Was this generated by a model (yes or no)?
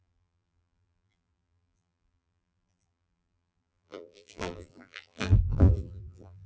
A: yes